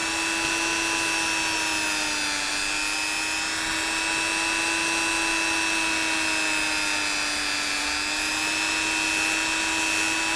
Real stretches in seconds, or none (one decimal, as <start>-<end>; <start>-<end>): 0.0-10.4